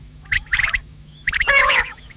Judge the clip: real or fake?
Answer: fake